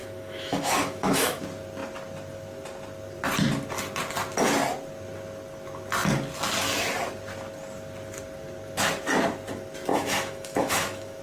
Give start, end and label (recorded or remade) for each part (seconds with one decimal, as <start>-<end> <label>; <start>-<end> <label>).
0.0-1.4 remade; 1.4-9.9 recorded; 9.9-11.2 remade